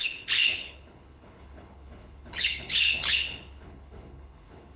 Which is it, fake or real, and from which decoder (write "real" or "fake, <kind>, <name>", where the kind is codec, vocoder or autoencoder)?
fake, codec, HILCodec